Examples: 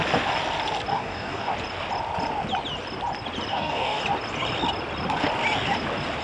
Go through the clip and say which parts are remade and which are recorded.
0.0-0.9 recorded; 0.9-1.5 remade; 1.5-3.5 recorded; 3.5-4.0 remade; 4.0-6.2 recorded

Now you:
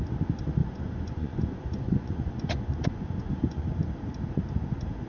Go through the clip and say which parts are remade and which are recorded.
0.0-0.6 recorded; 0.6-3.7 remade; 3.7-5.1 recorded

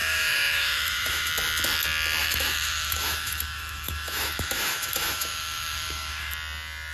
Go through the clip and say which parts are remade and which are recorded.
0.0-1.3 remade; 1.3-2.2 recorded; 2.2-6.3 remade; 6.3-6.9 recorded

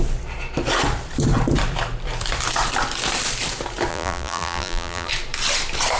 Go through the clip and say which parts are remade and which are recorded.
0.0-3.9 recorded; 3.9-5.1 remade; 5.1-6.0 recorded